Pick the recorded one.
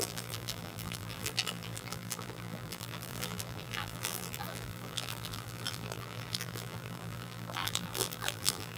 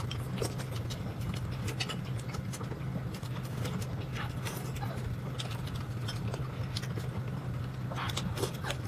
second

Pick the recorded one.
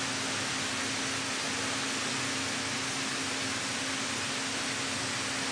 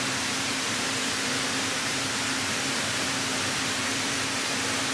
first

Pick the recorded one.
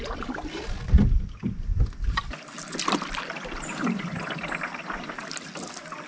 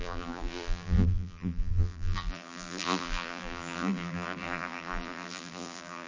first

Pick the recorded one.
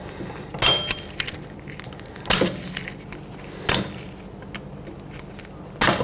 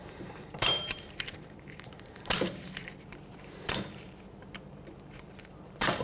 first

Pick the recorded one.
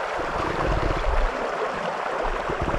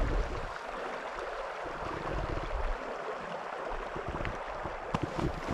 second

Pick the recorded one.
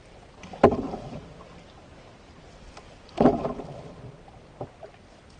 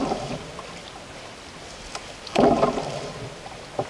second